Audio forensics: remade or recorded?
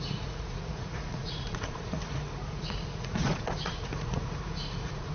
remade